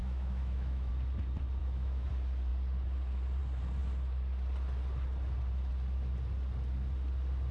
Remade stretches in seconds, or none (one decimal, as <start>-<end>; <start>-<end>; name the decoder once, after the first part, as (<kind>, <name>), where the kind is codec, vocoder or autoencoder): 0.0-0.9 (autoencoder, DAC-VAE); 1.6-2.1